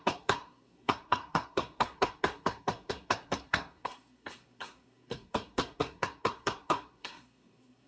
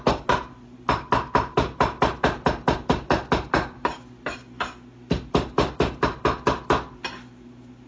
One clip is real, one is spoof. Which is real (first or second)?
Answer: second